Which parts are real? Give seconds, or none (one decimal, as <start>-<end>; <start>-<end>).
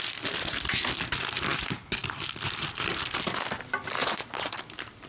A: 0.0-4.0; 4.6-5.1